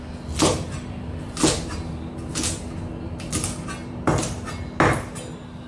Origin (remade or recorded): recorded